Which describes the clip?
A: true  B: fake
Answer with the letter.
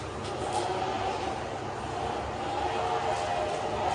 A